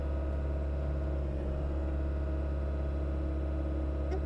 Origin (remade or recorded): recorded